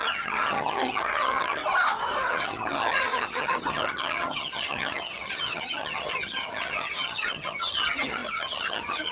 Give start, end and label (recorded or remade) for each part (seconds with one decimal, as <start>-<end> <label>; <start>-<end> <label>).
0.0-1.6 remade; 1.6-2.3 recorded; 2.3-9.1 remade

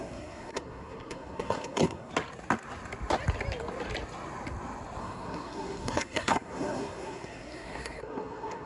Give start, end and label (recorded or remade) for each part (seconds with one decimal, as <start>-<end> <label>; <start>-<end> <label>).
0.0-2.1 remade; 2.1-5.0 recorded; 5.0-8.7 remade

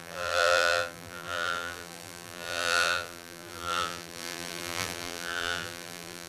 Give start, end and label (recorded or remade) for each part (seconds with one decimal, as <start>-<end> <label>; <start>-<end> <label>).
0.0-6.3 remade